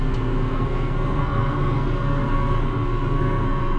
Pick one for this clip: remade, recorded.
remade